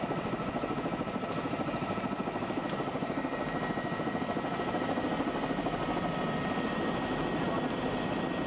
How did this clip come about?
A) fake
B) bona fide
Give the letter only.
B